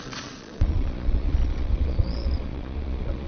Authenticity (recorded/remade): remade